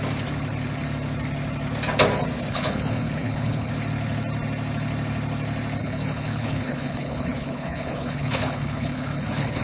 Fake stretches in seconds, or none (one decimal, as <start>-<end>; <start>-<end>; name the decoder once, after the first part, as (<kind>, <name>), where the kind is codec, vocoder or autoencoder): 2.5-3.7 (codec, HILCodec); 5.8-9.6